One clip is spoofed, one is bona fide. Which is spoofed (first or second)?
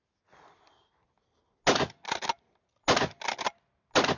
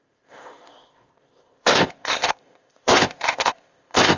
second